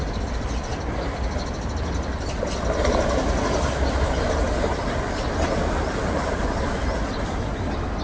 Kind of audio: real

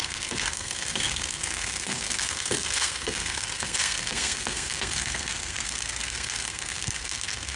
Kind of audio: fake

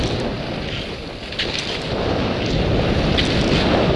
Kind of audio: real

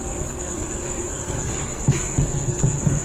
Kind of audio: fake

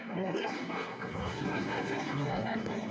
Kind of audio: fake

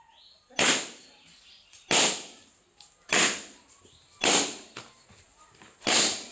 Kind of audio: real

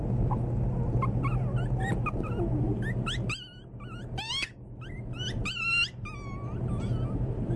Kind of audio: real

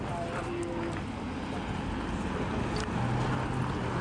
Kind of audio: real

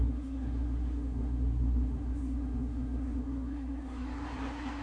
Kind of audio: fake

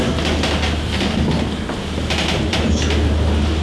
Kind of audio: real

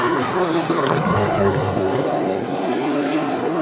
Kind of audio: fake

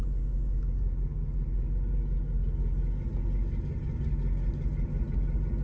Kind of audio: real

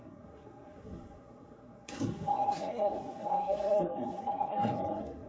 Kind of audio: fake